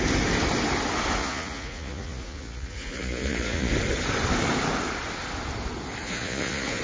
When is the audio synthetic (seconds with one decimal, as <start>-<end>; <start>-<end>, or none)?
1.2-3.7; 6.0-6.8